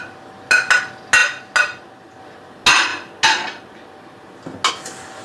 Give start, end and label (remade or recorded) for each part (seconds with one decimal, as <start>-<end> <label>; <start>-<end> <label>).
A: 0.0-5.2 recorded